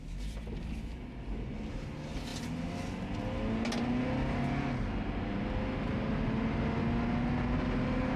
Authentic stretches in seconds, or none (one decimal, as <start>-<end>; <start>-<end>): 0.0-8.2